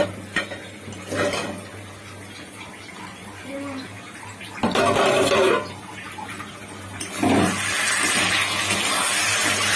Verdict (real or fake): real